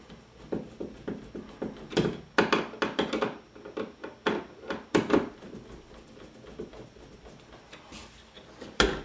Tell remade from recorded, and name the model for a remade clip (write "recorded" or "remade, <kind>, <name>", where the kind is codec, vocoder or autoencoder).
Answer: recorded